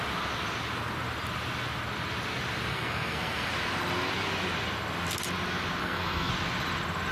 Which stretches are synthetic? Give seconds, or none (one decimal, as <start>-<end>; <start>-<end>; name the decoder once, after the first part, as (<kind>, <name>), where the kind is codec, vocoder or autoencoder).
2.7-3.5 (codec, SNAC); 5.8-6.3